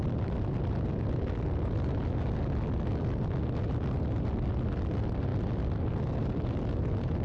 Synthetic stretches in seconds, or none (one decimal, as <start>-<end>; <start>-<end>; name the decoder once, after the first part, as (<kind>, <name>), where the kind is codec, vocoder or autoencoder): none